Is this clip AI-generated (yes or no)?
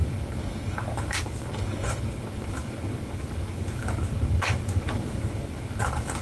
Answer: yes